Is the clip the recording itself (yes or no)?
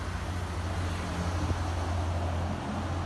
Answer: yes